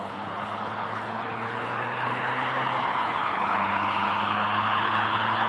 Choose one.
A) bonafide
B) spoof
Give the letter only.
B